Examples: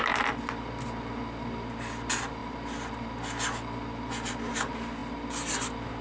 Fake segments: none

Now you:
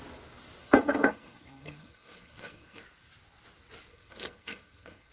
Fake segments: 0.6-2.8; 3.9-5.1

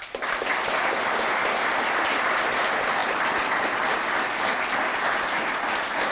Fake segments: none

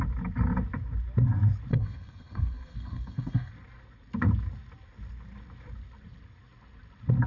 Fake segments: 1.7-3.5

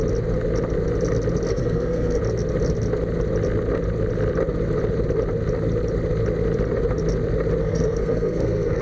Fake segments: 1.5-2.2; 7.6-8.8